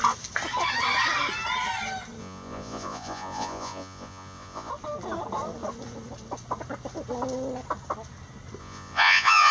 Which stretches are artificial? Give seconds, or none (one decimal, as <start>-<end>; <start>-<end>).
2.2-4.7; 8.6-9.5